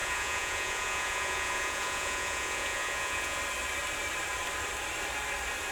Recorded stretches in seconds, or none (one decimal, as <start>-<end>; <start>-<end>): 3.4-5.7